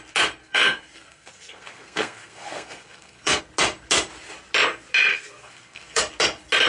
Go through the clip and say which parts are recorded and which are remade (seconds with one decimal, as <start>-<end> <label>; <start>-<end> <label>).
0.0-0.4 recorded; 0.4-3.4 remade; 3.4-5.1 recorded; 5.1-6.0 remade; 6.0-6.7 recorded